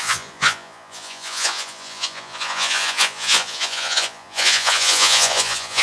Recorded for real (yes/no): no